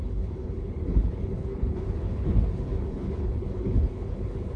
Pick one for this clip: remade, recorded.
remade